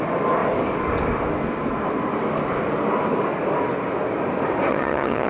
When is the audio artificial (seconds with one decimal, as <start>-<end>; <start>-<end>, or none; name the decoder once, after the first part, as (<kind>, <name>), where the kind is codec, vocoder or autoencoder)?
4.7-5.3 (vocoder, HiFi-GAN)